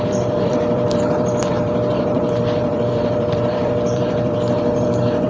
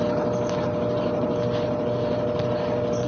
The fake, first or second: first